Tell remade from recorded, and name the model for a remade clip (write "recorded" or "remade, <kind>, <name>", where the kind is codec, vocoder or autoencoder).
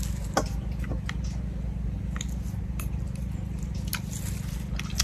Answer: recorded